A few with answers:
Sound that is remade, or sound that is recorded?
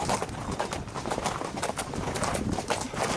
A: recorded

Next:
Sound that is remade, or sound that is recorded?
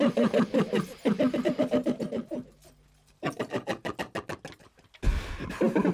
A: recorded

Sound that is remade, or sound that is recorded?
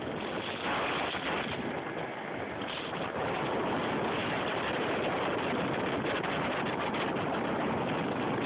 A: recorded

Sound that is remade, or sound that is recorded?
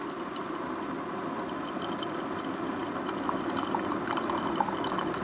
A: recorded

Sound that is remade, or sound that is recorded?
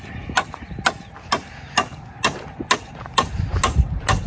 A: recorded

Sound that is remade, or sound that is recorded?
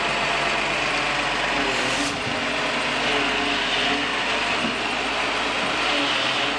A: recorded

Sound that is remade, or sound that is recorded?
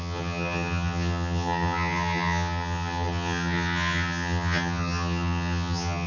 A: remade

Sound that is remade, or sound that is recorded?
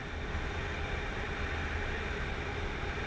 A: recorded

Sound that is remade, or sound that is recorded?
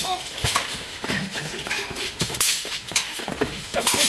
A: remade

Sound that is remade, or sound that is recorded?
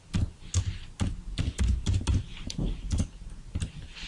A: recorded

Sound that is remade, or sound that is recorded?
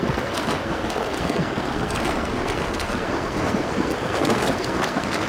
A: remade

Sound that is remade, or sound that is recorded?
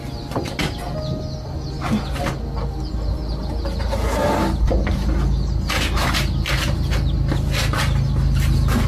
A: recorded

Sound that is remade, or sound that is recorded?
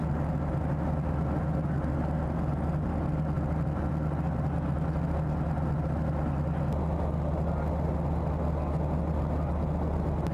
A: recorded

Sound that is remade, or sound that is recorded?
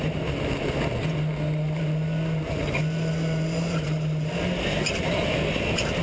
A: recorded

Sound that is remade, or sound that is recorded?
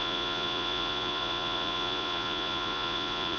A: remade